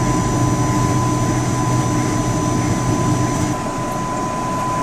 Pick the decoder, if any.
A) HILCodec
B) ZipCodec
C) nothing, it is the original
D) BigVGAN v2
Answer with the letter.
C